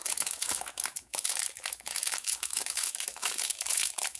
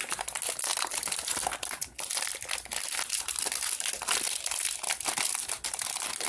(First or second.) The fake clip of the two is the first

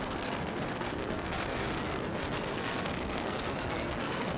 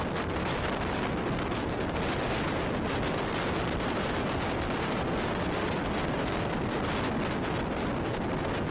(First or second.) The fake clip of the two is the first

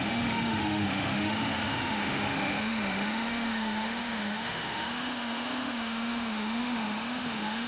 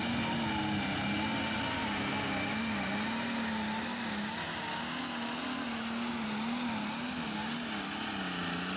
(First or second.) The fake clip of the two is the first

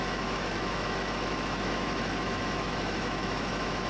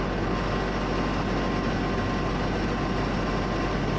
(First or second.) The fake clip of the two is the first